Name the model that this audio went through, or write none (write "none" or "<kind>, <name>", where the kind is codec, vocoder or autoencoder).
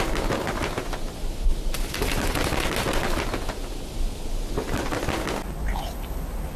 none